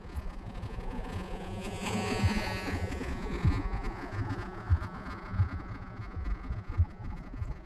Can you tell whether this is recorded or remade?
remade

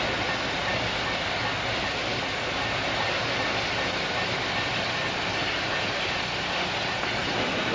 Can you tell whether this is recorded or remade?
recorded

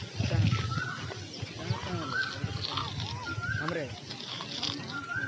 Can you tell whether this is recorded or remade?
recorded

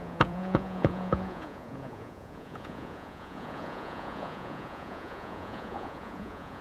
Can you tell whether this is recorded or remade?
remade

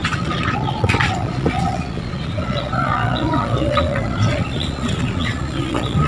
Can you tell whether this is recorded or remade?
remade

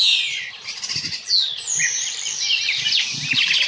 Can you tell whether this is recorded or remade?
recorded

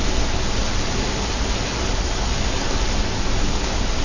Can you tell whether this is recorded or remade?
recorded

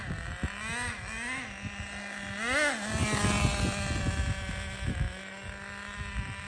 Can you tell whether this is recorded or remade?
recorded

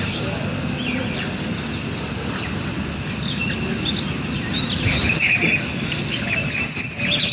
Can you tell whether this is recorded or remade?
recorded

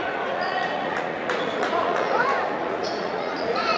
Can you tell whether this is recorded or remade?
remade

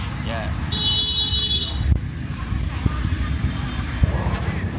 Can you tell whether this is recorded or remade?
recorded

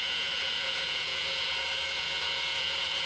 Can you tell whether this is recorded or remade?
remade